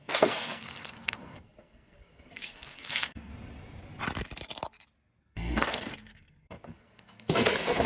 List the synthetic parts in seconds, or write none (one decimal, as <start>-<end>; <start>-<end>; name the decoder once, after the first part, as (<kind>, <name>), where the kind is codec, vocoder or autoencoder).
0.0-3.3 (codec, SNAC); 5.2-7.9